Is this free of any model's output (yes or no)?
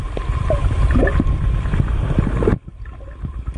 yes